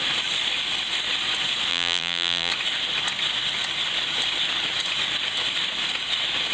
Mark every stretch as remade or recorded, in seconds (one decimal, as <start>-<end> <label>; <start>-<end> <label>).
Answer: 0.0-1.7 recorded; 1.7-2.5 remade; 2.5-6.5 recorded